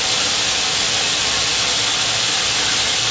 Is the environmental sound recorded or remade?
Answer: recorded